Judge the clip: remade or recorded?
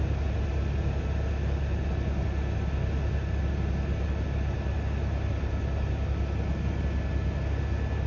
recorded